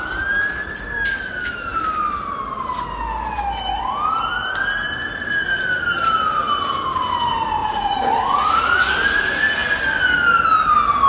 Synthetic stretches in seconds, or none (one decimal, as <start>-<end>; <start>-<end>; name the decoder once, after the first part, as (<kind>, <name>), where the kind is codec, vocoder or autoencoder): 7.6-8.9 (vocoder, Vocos)